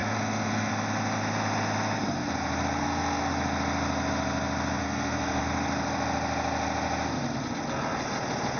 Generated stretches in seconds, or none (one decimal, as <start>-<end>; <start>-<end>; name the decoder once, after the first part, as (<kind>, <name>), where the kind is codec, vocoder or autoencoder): 0.0-0.7 (codec, SNAC); 2.8-3.3; 4.8-5.4